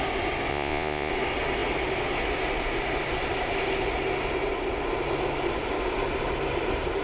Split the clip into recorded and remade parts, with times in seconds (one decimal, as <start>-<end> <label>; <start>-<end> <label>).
0.0-0.5 recorded; 0.5-1.1 remade; 1.1-7.0 recorded